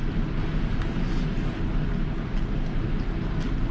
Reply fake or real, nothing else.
real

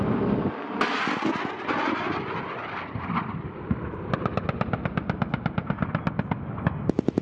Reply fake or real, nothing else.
real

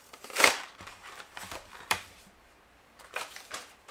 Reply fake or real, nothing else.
fake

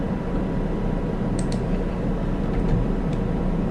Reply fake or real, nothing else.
fake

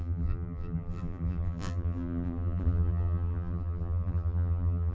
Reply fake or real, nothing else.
fake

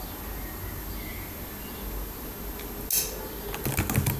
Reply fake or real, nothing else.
real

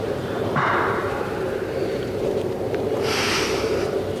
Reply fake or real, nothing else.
fake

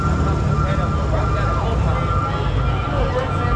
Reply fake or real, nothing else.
real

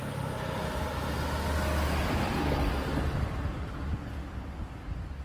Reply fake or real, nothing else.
real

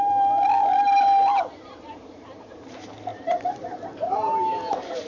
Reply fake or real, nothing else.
fake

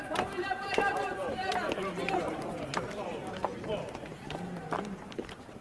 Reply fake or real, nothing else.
fake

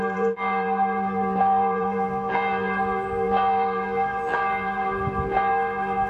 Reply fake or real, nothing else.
fake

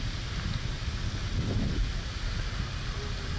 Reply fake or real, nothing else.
real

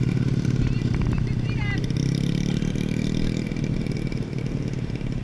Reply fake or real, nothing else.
fake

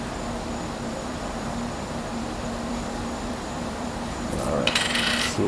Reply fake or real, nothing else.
fake